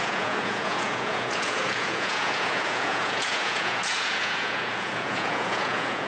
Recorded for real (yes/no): no